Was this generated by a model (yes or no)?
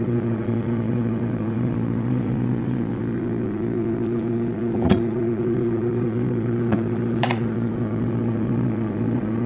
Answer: yes